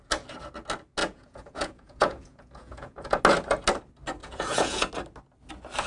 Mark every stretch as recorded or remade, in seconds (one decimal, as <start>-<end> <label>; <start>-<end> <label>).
0.0-1.0 recorded; 1.0-3.2 remade; 3.2-4.2 recorded; 4.2-4.9 remade; 4.9-5.9 recorded